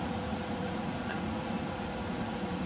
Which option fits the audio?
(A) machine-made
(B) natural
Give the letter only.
A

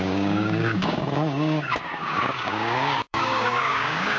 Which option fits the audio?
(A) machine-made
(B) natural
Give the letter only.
A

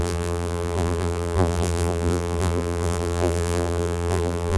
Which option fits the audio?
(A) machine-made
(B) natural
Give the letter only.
A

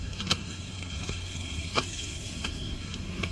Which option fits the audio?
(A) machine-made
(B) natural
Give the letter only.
A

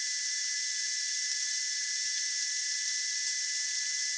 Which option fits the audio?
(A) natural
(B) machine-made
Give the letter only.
B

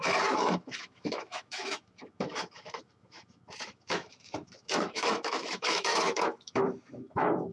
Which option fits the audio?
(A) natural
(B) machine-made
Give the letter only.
B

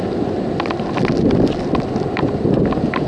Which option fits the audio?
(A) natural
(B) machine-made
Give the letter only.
A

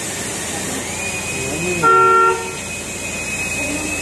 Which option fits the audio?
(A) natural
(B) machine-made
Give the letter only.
A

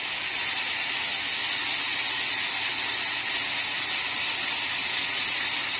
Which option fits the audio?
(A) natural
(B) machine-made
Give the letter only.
A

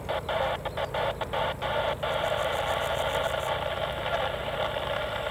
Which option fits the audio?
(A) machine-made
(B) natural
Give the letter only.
B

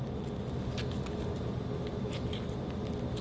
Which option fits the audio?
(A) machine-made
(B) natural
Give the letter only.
B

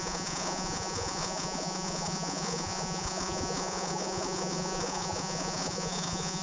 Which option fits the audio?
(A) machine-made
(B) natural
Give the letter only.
A